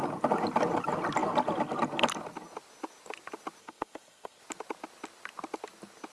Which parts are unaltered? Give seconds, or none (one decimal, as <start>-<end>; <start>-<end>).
0.0-3.6; 4.4-6.1